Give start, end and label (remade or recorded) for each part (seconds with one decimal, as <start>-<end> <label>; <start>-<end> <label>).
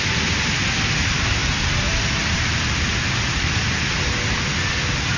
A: 0.0-5.2 recorded